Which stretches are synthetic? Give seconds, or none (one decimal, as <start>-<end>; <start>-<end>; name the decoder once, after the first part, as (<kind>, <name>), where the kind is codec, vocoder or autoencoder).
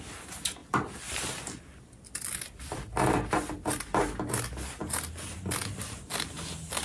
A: 0.6-3.7 (vocoder, BigVGAN v2); 4.8-6.1